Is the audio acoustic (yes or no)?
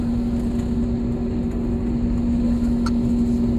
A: yes